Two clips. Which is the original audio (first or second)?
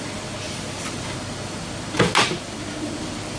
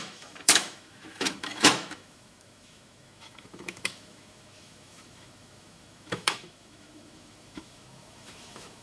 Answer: first